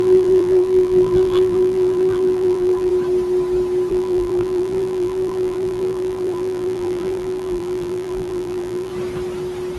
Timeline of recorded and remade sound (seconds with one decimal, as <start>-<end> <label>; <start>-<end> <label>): 0.0-2.9 remade; 2.9-3.9 recorded; 3.9-8.9 remade; 8.9-9.8 recorded